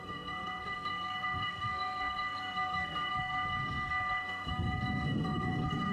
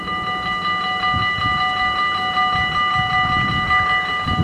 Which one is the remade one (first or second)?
first